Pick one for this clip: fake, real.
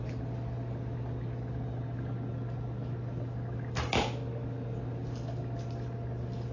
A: real